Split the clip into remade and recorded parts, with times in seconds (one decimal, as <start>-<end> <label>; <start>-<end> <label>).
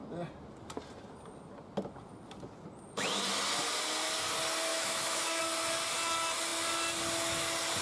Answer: 0.0-4.7 recorded; 4.7-5.4 remade; 5.4-7.8 recorded